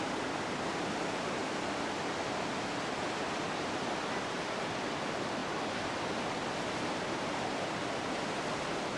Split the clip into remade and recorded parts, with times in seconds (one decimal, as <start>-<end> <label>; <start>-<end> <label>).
0.0-9.0 recorded